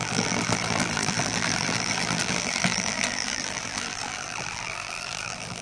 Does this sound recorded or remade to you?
remade